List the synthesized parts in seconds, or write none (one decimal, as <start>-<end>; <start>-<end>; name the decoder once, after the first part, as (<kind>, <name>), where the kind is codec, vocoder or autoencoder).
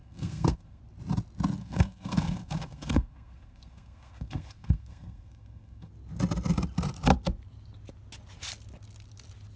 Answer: 0.0-0.8 (codec, SNAC); 1.6-5.9